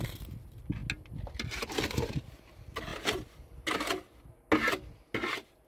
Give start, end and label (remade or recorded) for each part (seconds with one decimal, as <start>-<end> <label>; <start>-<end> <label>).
0.0-5.7 recorded